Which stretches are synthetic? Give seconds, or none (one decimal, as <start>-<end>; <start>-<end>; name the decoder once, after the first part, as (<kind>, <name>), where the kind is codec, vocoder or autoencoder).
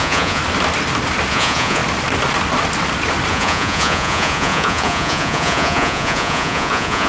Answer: 0.0-0.4 (vocoder, Vocos); 1.3-1.8; 3.3-7.1